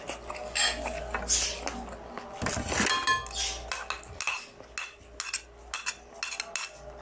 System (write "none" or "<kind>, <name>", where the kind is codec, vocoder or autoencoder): none